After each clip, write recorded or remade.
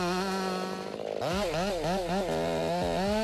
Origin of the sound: recorded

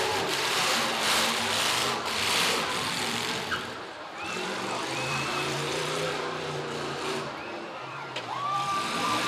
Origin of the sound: remade